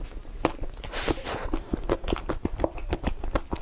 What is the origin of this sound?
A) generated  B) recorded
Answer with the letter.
B